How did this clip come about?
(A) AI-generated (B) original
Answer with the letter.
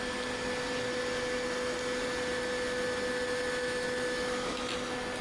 B